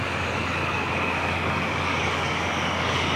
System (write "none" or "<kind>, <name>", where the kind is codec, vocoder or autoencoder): codec, DAC